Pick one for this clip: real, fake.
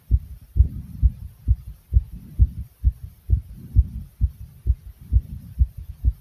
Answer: real